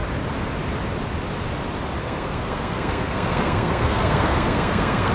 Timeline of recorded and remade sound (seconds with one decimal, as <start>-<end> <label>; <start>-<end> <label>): 0.0-2.0 recorded; 2.0-5.1 remade